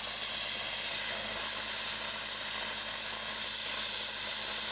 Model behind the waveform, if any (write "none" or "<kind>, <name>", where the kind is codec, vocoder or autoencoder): none